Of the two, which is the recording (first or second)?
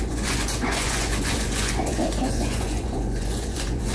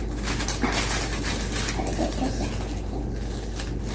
second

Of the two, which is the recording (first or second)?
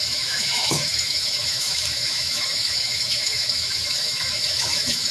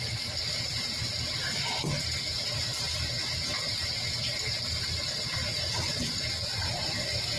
second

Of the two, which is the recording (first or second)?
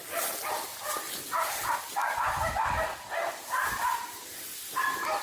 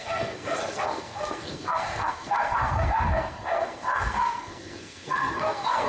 first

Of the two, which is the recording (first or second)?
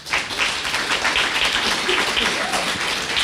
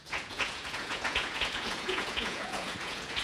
first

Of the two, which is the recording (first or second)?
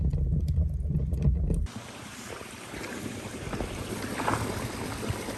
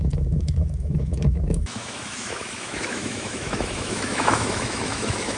first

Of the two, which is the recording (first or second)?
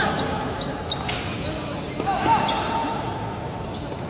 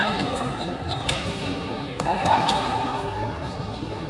first